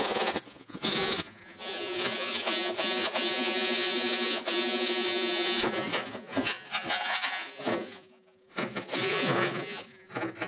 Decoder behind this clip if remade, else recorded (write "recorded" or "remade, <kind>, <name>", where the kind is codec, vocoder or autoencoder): remade, vocoder, Vocos